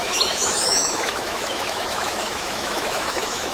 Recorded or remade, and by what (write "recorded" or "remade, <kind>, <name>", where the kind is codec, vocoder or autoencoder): remade, autoencoder, DAC-VAE